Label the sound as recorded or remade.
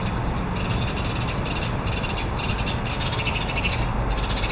recorded